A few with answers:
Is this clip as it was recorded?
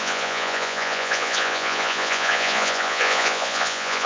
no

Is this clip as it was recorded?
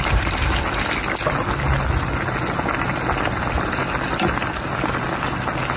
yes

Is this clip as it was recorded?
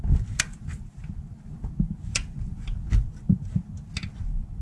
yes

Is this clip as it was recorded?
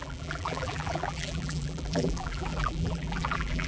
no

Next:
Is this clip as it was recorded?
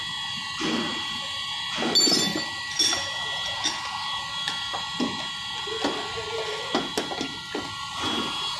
yes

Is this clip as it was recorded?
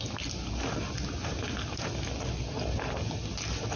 yes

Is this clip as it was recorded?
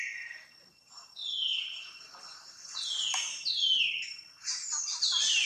yes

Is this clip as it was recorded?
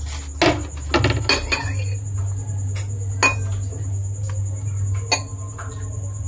yes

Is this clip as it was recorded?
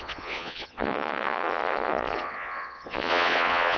no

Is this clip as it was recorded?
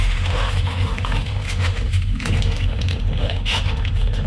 no